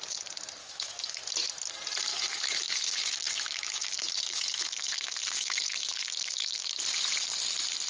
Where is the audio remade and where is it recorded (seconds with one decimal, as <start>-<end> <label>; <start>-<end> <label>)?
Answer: 0.0-0.6 recorded; 0.6-1.2 remade; 1.2-2.1 recorded; 2.1-6.8 remade; 6.8-7.9 recorded